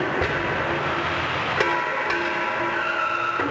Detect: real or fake real